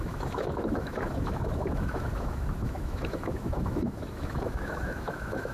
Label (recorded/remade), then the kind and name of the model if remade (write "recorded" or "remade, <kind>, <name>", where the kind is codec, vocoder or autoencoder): remade, autoencoder, DAC-VAE